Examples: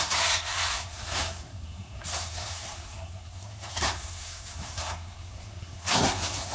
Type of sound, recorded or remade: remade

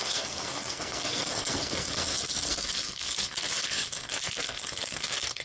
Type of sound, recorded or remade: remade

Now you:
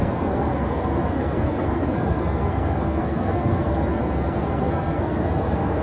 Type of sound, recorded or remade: remade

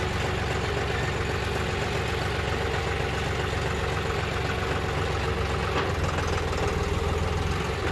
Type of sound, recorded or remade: recorded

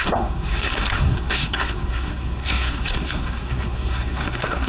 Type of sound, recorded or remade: remade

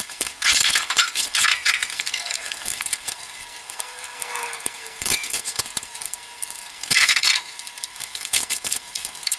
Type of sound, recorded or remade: remade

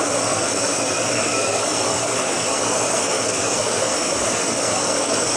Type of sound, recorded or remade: remade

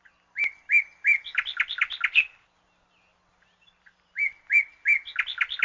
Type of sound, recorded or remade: recorded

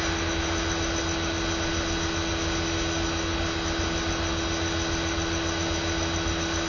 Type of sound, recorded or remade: recorded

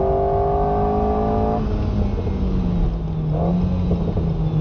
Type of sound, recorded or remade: recorded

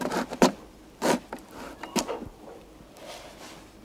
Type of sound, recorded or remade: recorded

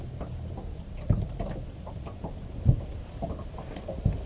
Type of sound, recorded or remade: recorded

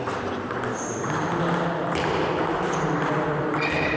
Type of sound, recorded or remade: recorded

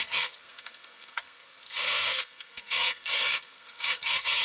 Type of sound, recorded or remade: remade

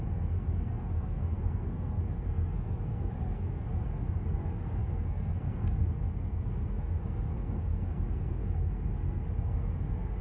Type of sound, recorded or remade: remade